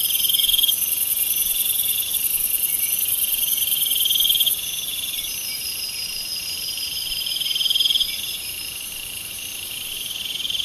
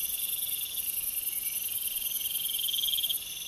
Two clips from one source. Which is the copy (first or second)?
first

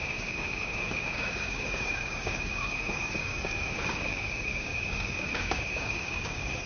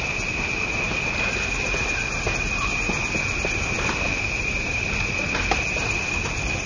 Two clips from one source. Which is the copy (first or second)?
first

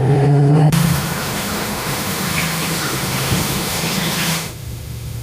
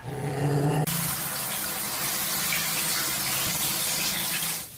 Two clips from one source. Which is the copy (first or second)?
first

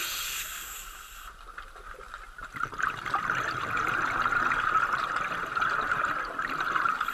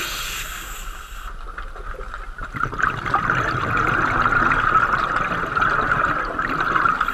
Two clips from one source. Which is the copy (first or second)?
first